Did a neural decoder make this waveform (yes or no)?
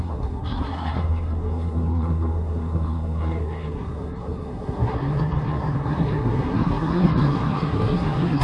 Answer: yes